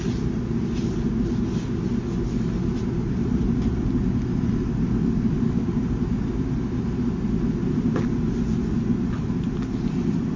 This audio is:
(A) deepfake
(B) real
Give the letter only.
B